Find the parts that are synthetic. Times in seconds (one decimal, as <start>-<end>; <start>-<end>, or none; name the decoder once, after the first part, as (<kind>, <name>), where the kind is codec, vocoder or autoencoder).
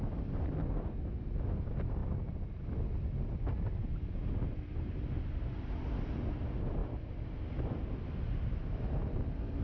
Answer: none